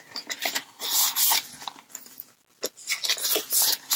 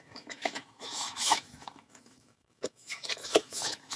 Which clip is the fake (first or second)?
second